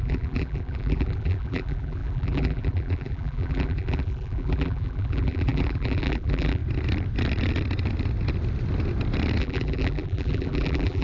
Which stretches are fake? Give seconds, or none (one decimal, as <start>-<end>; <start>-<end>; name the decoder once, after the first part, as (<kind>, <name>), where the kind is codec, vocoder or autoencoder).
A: 0.0-6.6 (vocoder, BigVGAN v2); 9.4-11.0